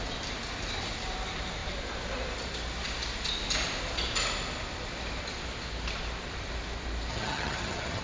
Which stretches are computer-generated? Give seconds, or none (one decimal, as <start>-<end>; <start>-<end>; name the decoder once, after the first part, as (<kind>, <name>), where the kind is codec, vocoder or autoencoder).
7.1-8.0 (vocoder, HiFi-GAN)